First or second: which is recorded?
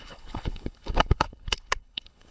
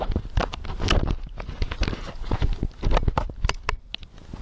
second